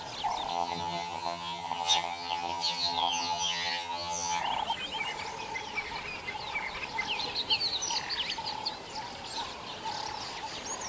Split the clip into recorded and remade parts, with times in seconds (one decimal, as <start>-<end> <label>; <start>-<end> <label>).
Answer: 0.0-0.5 recorded; 0.5-4.4 remade; 4.4-10.9 recorded